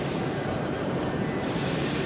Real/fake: fake